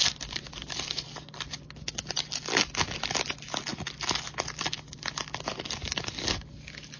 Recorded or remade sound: recorded